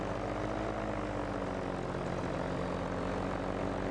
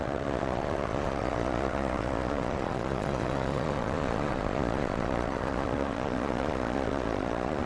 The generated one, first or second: second